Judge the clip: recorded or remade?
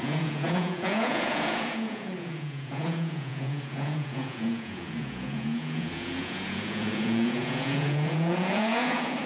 remade